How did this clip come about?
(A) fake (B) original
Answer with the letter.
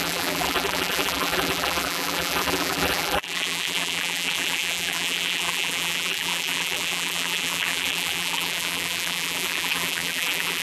A